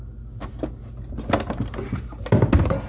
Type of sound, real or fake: real